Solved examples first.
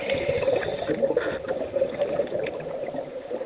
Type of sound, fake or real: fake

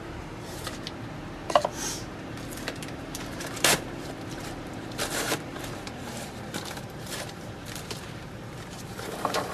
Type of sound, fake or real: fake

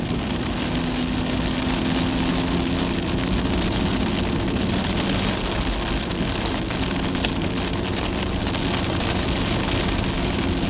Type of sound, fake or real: real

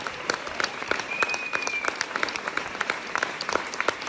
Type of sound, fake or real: fake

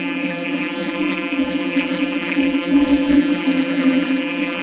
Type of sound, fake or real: fake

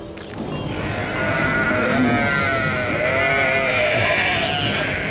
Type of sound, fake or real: real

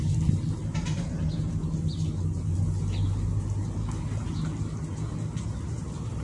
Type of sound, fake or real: real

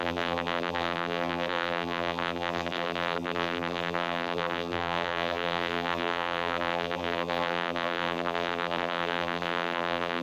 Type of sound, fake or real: fake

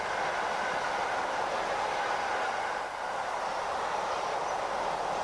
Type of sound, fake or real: real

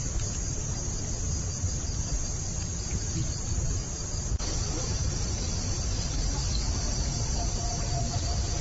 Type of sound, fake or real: fake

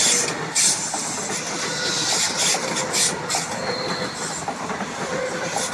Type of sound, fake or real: real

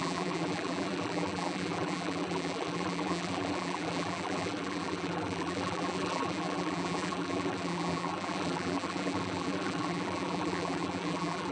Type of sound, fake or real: fake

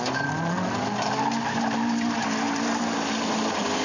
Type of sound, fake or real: fake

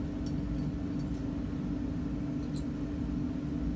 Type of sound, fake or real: real